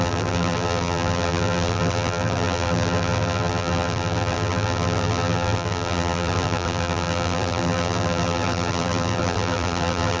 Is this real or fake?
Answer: fake